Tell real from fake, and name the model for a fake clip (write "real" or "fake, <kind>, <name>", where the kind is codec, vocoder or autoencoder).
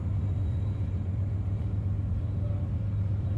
fake, vocoder, BigVGAN v2